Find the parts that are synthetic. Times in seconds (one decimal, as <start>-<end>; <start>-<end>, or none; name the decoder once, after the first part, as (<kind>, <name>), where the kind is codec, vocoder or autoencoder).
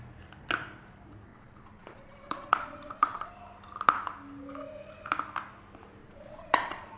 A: 1.3-3.3 (vocoder, Vocos); 6.0-7.0